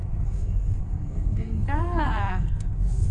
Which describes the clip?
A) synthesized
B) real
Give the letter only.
A